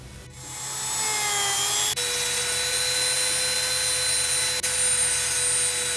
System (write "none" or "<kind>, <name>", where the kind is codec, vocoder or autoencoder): none